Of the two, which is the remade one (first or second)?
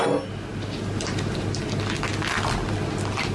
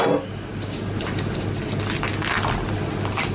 second